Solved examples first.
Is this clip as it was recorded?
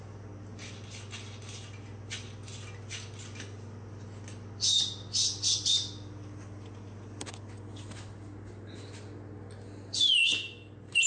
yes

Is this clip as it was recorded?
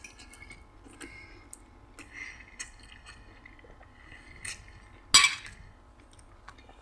yes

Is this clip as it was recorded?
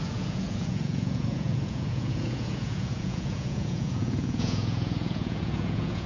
no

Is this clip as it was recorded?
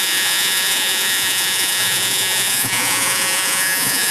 no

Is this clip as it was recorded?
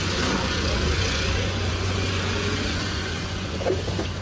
no